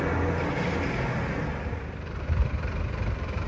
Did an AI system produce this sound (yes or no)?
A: no